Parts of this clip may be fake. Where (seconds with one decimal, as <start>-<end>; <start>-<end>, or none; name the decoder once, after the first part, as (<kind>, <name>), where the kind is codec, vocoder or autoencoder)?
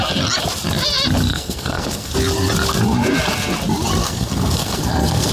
1.3-2.1 (codec, SNAC); 4.0-5.3